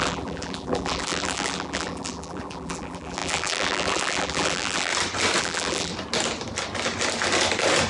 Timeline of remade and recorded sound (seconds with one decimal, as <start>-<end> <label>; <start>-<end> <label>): 0.0-4.9 remade; 4.9-5.4 recorded; 5.4-5.9 remade; 5.9-7.9 recorded